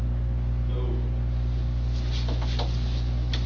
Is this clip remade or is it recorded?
recorded